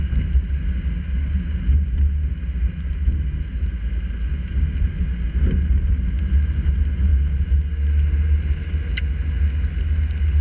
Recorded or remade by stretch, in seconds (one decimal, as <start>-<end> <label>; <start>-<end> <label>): 0.0-10.4 recorded